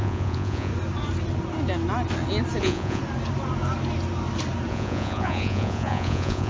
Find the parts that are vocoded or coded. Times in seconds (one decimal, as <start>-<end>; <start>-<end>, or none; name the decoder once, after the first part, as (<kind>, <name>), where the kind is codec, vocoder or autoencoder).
0.0-0.7 (vocoder, Vocos); 2.6-3.0; 4.7-6.5

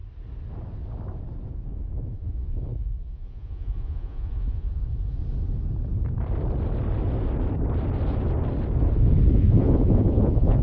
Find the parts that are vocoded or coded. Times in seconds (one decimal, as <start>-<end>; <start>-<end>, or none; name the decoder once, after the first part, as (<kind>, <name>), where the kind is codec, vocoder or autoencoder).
1.5-5.2 (vocoder, Vocos); 9.3-10.6

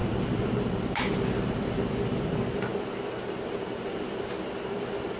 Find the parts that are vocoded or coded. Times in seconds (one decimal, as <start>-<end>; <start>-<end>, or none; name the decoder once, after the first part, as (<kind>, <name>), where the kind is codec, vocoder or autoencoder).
none

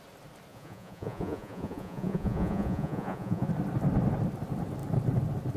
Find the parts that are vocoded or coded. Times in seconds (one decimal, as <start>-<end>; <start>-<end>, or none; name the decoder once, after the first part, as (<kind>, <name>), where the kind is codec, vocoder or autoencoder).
0.5-3.5 (vocoder, Vocos)